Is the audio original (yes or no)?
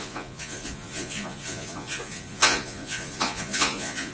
no